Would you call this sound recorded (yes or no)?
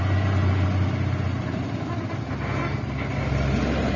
yes